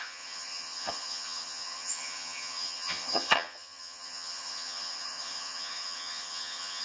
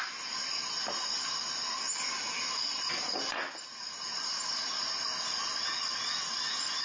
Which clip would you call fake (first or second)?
first